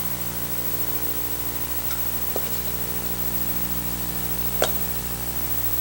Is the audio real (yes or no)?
yes